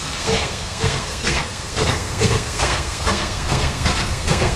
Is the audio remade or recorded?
remade